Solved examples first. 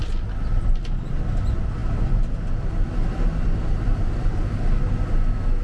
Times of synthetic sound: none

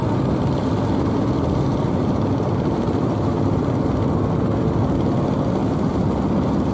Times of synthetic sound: none

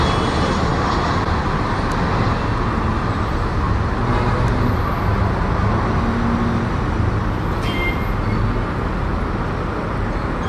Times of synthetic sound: none

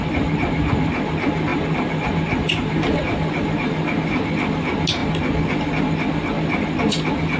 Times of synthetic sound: 1.5-3.0

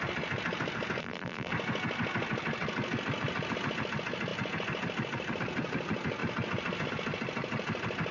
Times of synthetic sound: 1.0-1.5